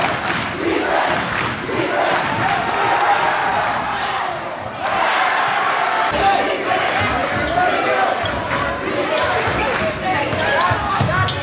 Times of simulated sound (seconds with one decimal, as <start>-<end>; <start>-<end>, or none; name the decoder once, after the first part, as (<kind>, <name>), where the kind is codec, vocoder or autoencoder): none